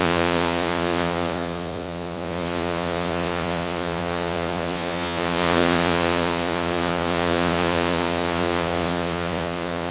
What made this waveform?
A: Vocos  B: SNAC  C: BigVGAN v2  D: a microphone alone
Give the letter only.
A